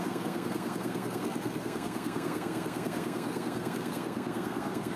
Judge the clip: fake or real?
fake